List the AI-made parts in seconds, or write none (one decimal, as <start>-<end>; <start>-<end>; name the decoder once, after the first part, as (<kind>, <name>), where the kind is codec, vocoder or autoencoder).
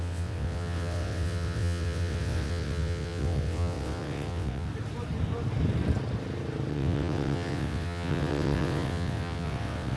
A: 0.0-4.7 (vocoder, WaveNeXt); 6.7-10.0